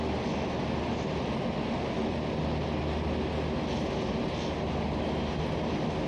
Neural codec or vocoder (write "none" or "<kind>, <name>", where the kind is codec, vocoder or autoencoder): none